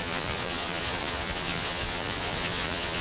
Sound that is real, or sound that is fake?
fake